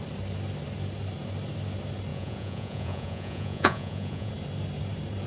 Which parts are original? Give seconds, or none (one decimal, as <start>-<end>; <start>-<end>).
0.0-2.1; 4.3-5.3